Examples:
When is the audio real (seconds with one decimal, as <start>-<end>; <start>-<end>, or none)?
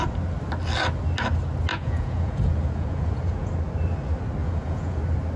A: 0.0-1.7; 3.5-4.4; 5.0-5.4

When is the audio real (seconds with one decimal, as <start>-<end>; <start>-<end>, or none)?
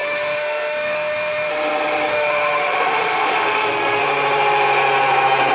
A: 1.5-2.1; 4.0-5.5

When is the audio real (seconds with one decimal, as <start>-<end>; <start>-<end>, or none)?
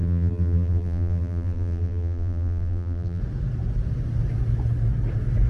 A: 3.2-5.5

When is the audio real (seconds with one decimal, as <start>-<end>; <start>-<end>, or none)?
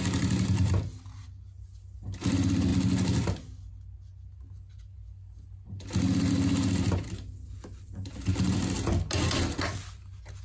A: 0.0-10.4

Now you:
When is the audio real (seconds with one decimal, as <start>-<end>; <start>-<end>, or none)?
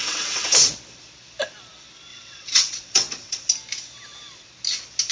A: 0.7-2.1; 3.5-5.1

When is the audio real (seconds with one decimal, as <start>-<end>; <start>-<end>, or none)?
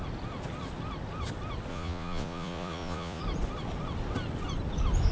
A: 0.0-1.7; 3.2-5.1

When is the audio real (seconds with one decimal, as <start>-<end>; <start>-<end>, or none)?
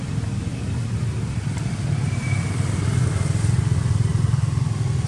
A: 0.0-0.5; 3.6-4.1; 4.6-5.1